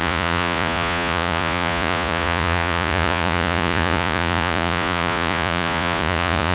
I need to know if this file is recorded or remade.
remade